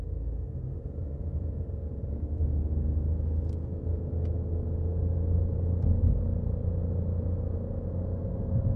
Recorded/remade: recorded